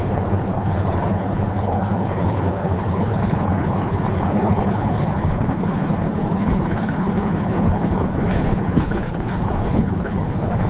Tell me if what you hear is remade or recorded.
remade